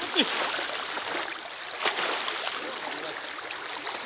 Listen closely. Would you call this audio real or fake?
real